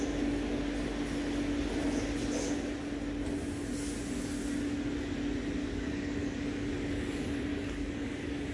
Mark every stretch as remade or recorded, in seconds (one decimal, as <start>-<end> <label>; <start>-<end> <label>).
0.0-5.6 recorded; 5.6-6.7 remade; 6.7-7.5 recorded; 7.5-8.5 remade